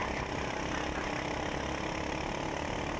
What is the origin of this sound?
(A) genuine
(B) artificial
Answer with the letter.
A